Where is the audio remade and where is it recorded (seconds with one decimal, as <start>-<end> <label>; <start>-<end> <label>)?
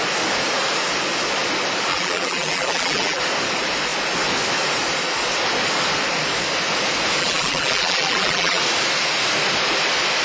0.0-1.9 recorded; 1.9-3.2 remade; 3.2-7.2 recorded; 7.2-8.6 remade; 8.6-10.2 recorded